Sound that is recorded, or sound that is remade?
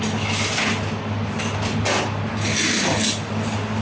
recorded